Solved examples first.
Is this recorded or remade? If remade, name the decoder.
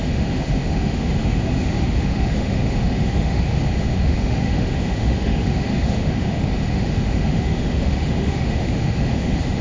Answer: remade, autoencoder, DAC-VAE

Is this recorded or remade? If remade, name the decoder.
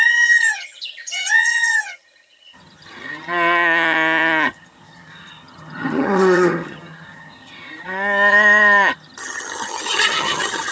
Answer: remade, vocoder, HiFi-GAN